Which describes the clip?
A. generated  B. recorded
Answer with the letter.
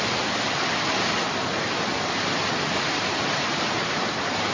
B